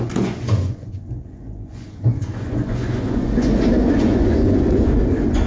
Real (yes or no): no